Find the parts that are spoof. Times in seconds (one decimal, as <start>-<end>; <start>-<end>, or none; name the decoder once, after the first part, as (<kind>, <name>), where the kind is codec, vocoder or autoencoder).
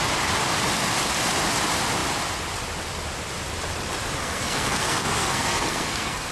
4.2-6.3 (codec, SNAC)